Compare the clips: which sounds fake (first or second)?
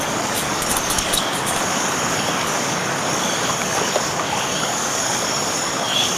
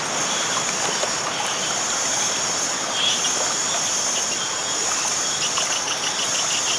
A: first